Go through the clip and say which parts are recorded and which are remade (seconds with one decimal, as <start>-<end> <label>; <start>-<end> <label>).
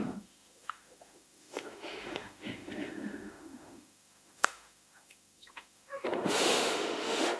0.0-7.4 remade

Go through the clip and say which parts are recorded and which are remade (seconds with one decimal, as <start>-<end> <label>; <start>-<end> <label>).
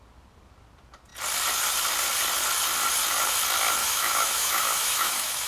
0.0-3.8 recorded; 3.8-5.5 remade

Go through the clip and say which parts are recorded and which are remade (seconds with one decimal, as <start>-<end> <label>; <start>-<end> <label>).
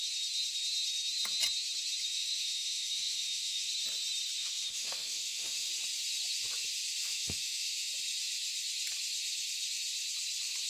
0.0-2.1 recorded; 2.1-3.7 remade; 3.7-4.4 recorded; 4.4-5.7 remade; 5.7-7.0 recorded; 7.0-7.9 remade; 7.9-10.7 recorded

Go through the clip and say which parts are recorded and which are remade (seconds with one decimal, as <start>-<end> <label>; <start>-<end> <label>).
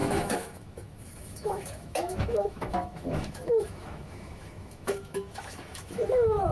0.0-6.5 remade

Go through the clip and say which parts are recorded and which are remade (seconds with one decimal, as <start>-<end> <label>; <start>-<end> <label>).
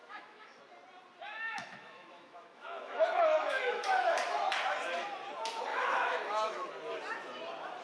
0.0-0.6 remade; 0.6-1.3 recorded; 1.3-4.2 remade; 4.2-5.7 recorded; 5.7-6.7 remade; 6.7-7.8 recorded